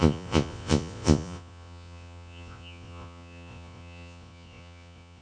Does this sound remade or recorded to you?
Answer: remade